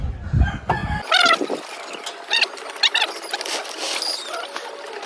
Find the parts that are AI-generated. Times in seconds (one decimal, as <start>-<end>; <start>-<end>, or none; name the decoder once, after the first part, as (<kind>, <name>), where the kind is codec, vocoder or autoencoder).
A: none